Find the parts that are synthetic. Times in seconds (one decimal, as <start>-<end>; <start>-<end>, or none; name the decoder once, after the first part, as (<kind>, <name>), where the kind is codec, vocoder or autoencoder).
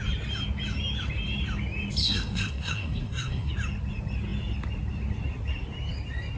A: 2.0-3.5 (codec, SNAC)